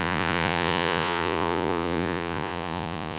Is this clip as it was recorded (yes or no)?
no